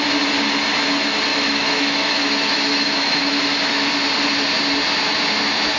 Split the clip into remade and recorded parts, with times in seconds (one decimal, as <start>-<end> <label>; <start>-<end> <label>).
0.0-1.3 recorded; 1.3-3.9 remade; 3.9-5.8 recorded